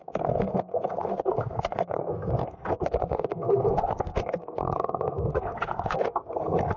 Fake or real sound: fake